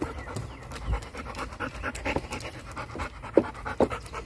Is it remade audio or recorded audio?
recorded